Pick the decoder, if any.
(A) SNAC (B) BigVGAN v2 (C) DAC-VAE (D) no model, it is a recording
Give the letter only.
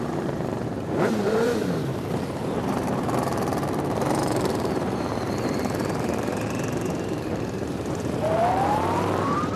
B